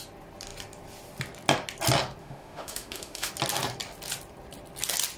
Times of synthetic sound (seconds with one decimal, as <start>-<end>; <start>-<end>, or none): 2.2-3.3